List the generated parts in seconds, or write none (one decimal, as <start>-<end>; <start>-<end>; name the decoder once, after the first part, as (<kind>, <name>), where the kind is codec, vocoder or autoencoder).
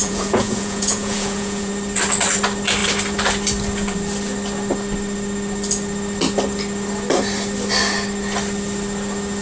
0.0-1.7 (vocoder, Vocos)